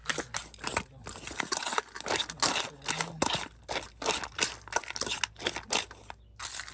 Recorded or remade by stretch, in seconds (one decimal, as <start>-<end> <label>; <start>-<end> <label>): 0.0-6.7 recorded